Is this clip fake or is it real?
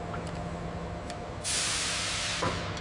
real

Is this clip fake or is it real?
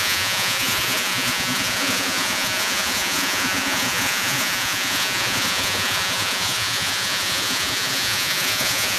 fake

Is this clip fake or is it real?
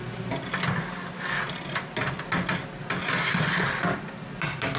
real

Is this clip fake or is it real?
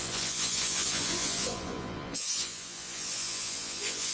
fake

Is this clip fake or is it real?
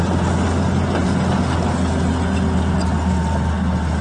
real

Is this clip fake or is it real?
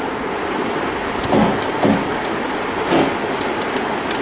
real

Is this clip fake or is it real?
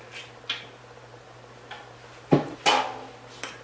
real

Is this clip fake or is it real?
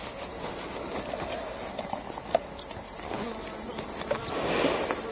real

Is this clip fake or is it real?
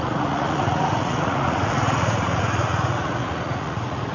fake